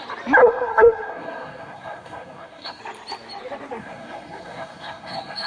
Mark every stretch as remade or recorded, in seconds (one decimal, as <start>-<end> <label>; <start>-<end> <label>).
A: 0.0-0.4 recorded; 0.4-2.8 remade; 2.8-3.8 recorded; 3.8-5.5 remade